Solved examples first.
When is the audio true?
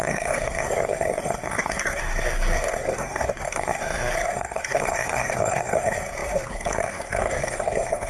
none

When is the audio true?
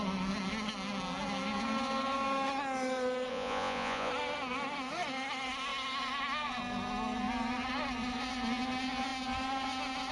0.0-3.3; 4.1-10.1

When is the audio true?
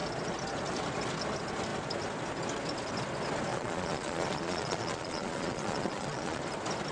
0.0-3.5; 6.4-6.9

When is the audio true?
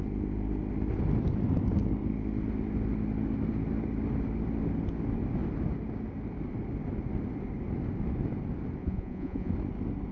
0.0-8.8; 9.5-10.1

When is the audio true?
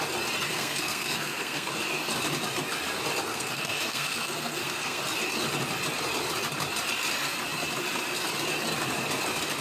0.0-0.5; 1.7-3.3; 5.0-9.6